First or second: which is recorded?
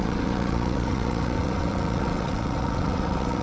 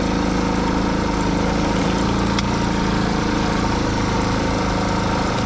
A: second